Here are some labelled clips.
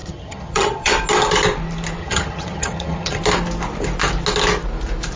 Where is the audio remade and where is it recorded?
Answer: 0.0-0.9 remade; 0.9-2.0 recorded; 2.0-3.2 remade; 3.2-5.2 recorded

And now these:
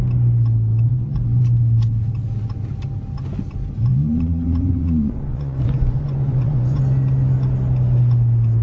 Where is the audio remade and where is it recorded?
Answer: 0.0-0.9 recorded; 0.9-1.4 remade; 1.4-3.9 recorded; 3.9-6.8 remade; 6.8-8.6 recorded

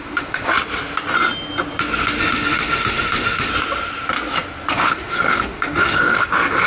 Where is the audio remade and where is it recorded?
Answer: 0.0-0.5 remade; 0.5-2.2 recorded; 2.2-3.5 remade; 3.5-4.7 recorded; 4.7-6.7 remade

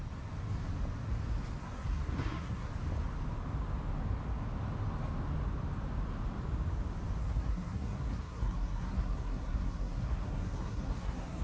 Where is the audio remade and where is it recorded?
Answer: 0.0-1.6 recorded; 1.6-2.7 remade; 2.7-7.2 recorded; 7.2-11.4 remade

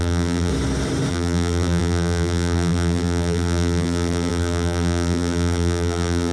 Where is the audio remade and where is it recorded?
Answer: 0.0-0.5 remade; 0.5-1.1 recorded; 1.1-6.3 remade

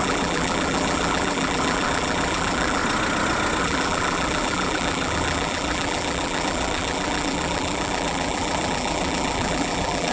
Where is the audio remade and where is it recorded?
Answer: 0.0-2.8 remade; 2.8-3.6 recorded; 3.6-10.1 remade